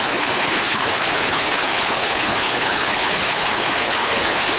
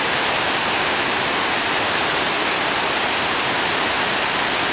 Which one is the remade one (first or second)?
first